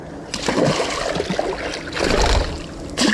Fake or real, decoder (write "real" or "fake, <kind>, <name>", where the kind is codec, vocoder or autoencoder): real